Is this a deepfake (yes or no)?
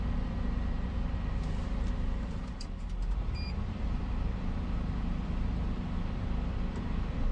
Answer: yes